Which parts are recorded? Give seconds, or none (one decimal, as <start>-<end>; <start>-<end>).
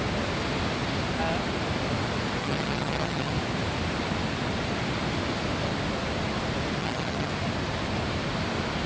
0.0-2.4; 3.3-6.8; 7.3-8.9